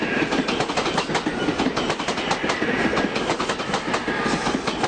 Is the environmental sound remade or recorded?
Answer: recorded